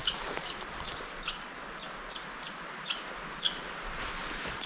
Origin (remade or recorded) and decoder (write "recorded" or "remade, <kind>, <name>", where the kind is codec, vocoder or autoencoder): recorded